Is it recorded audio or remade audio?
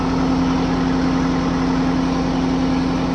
recorded